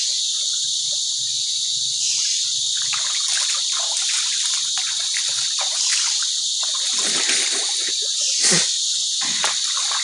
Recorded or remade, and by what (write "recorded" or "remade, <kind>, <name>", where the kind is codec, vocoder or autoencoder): recorded